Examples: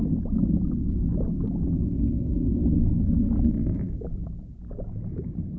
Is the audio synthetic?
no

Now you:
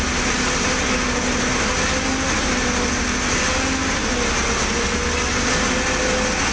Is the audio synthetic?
no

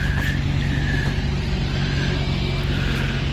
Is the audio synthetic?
no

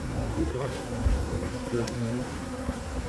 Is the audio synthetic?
yes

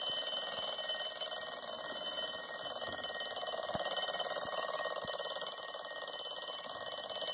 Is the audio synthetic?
no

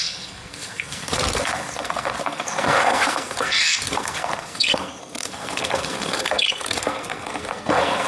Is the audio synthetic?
yes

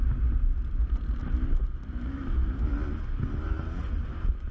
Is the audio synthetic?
no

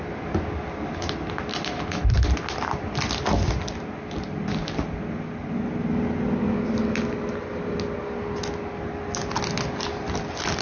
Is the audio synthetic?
no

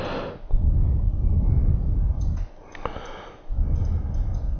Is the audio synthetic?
no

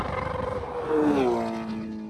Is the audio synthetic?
no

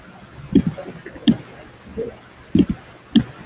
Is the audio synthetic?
no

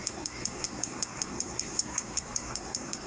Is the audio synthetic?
yes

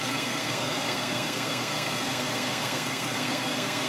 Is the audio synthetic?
yes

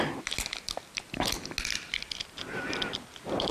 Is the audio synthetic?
no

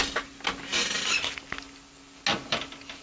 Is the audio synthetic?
no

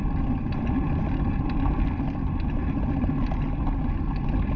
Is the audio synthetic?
no